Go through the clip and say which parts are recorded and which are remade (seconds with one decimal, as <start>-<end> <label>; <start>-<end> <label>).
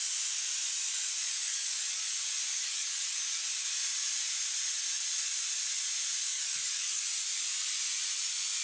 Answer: 0.0-1.2 recorded; 1.2-2.1 remade; 2.1-2.5 recorded; 2.5-3.4 remade; 3.4-6.2 recorded; 6.2-7.0 remade; 7.0-8.6 recorded